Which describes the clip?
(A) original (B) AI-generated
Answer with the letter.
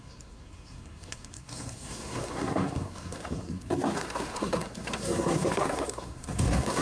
B